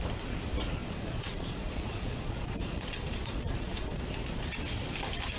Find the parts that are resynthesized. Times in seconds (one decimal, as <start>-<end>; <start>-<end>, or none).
0.8-4.0